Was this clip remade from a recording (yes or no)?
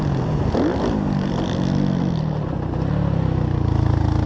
no